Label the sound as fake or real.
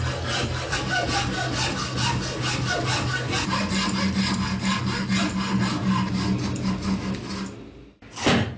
real